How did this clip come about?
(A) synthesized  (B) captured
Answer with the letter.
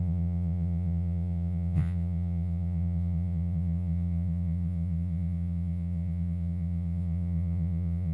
A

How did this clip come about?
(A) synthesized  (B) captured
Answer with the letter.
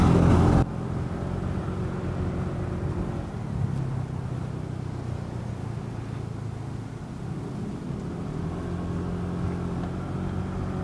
B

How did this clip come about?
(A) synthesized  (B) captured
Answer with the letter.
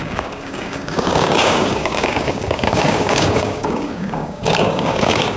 A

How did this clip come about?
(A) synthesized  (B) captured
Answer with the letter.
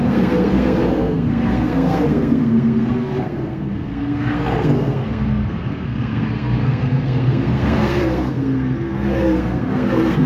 A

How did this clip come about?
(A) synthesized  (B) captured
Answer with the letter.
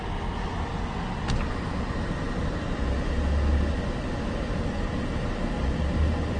B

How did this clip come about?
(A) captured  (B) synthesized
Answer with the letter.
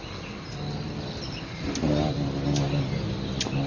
A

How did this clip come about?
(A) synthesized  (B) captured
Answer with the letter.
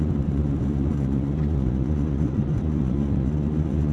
A